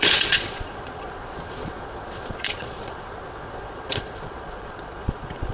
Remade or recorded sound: remade